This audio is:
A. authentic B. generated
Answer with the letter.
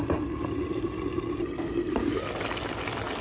A